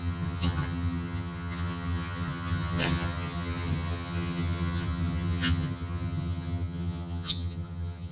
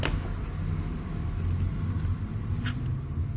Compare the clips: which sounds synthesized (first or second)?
first